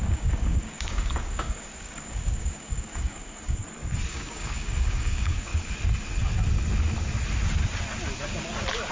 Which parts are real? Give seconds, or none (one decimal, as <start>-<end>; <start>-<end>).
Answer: 3.6-4.1; 5.5-8.9